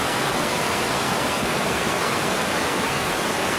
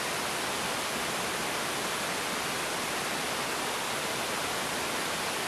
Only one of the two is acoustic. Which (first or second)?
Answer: second